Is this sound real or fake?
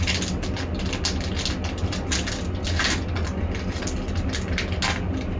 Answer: real